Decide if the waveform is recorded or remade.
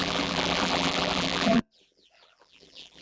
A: remade